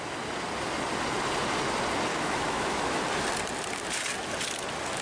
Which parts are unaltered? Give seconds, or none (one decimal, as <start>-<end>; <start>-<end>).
0.0-2.1; 3.0-5.0